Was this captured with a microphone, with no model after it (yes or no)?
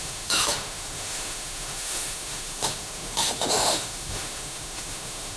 no